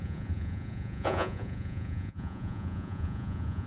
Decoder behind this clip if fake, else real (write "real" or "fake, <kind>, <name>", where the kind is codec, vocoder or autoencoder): fake, vocoder, Vocos